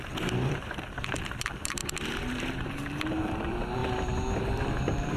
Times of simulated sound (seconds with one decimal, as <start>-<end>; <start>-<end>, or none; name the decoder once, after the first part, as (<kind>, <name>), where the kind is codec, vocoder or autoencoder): 0.0-3.8 (vocoder, BigVGAN v2); 4.4-5.2